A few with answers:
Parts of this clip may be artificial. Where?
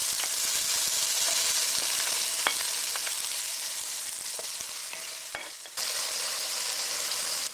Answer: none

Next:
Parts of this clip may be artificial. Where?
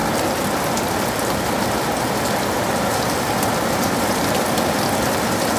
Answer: 0.0-5.6 (vocoder, BigVGAN v2)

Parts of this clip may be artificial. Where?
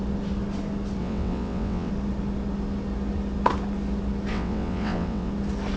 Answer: 1.0-1.9 (vocoder, WaveNeXt); 4.3-5.3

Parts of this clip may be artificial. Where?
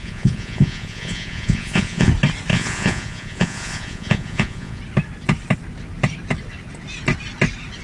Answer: 0.0-2.1 (vocoder, Vocos); 2.5-4.8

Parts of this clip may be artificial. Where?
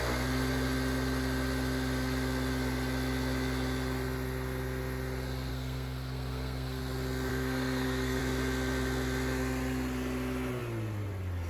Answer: 5.5-6.8 (codec, SNAC); 7.3-8.2